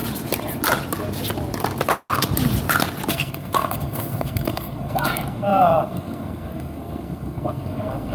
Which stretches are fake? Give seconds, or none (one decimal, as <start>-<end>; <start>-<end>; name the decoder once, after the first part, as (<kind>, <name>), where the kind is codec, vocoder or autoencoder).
3.1-8.1 (codec, SNAC)